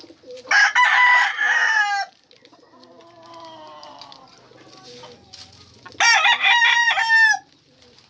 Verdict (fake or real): real